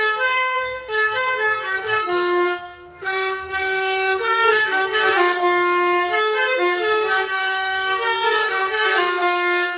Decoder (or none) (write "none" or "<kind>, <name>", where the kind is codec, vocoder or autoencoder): codec, SNAC